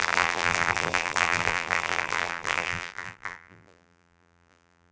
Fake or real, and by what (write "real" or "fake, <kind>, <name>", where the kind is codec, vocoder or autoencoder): fake, vocoder, BigVGAN v2